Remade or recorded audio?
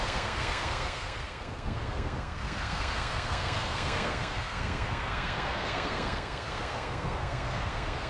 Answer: remade